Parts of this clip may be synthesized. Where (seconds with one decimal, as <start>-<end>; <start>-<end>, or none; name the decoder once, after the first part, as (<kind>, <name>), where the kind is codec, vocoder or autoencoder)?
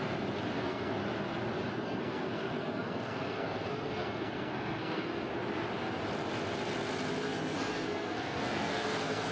0.6-1.0 (codec, SNAC); 1.7-5.3; 7.4-9.3